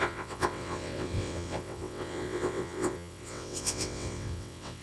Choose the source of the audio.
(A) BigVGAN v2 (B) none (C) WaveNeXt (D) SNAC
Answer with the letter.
C